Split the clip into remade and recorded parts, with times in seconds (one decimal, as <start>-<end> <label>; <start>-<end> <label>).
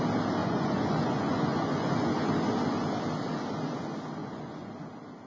0.0-0.4 recorded; 0.4-2.3 remade; 2.3-4.2 recorded; 4.2-4.7 remade; 4.7-5.3 recorded